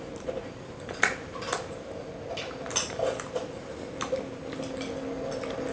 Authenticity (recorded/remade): recorded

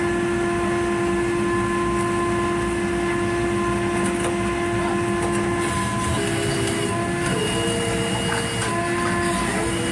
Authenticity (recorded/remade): recorded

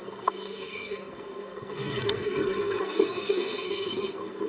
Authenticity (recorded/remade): remade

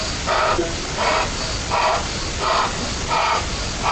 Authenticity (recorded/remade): recorded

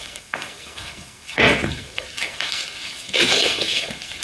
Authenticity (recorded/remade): remade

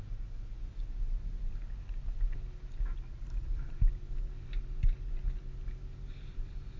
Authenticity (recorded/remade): recorded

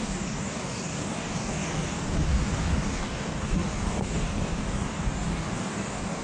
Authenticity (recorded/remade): remade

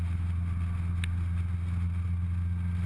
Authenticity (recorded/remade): recorded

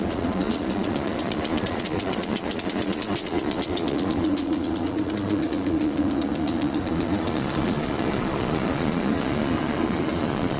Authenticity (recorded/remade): remade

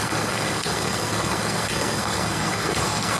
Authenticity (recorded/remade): remade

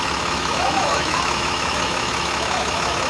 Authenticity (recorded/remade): remade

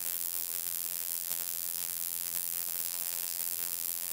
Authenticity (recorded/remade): remade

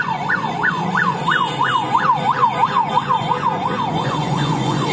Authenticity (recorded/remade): remade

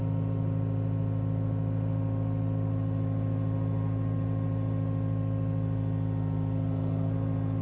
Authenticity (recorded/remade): recorded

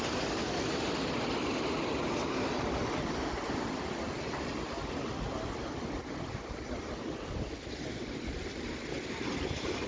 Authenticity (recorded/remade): recorded